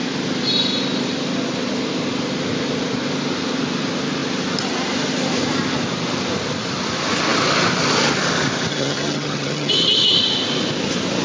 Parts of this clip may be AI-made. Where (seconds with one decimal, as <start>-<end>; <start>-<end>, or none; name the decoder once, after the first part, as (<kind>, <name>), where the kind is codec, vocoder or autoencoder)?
8.7-9.7 (vocoder, HiFi-GAN)